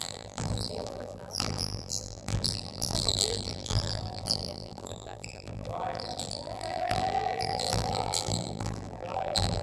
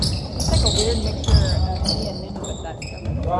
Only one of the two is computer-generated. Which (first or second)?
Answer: first